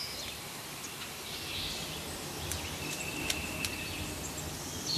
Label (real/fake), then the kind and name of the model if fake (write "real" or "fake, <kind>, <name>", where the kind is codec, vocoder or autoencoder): real